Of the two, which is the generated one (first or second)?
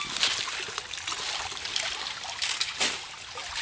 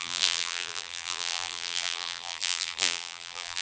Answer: second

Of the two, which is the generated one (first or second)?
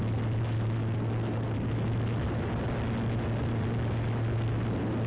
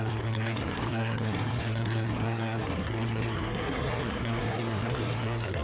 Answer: second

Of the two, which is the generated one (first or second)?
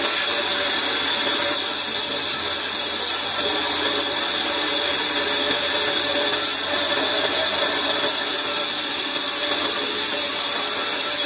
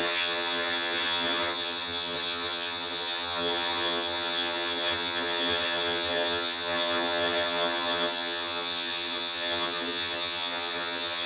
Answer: second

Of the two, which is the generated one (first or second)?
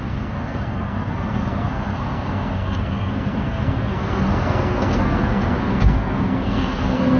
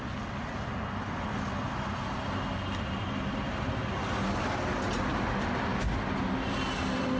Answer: first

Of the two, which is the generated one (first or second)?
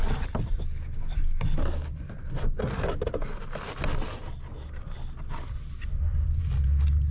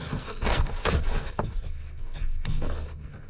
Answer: second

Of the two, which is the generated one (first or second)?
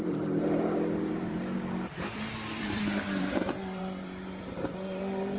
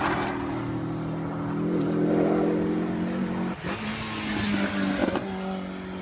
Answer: first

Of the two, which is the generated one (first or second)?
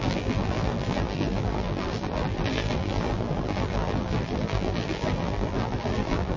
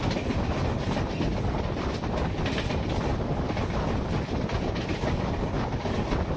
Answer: first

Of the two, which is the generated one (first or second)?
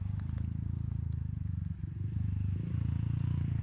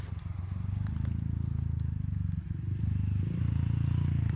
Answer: first